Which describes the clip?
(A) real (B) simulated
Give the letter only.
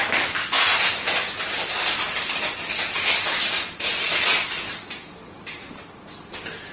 A